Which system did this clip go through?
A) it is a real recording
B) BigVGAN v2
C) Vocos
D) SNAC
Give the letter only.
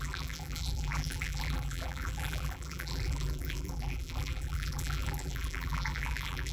B